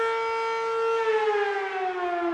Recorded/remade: recorded